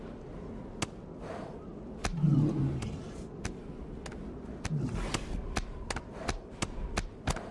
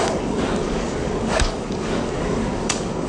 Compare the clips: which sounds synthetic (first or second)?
second